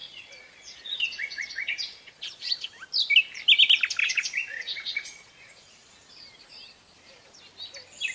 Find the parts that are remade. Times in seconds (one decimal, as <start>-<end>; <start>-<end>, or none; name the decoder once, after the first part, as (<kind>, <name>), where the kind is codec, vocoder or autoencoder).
0.0-2.7 (vocoder, Vocos); 4.0-5.9